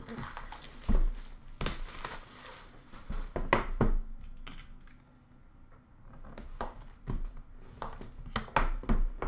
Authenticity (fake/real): real